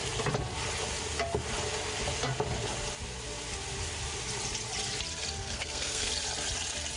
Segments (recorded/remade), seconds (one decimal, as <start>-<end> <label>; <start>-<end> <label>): 0.0-5.4 recorded; 5.4-6.1 remade; 6.1-7.0 recorded